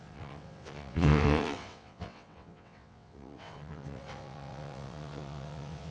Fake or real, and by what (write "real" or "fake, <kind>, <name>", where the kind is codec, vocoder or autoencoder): fake, vocoder, WaveNeXt